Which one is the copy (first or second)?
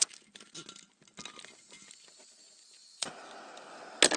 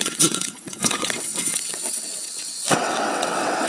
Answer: second